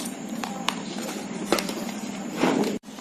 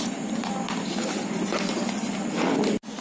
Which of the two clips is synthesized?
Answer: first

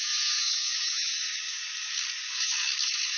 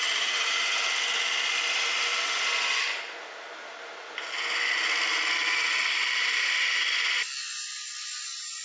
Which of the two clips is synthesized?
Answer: first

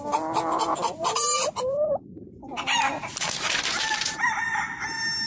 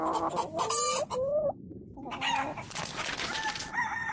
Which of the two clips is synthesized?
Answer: first